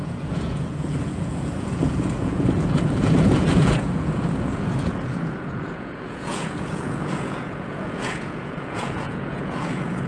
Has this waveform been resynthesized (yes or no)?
yes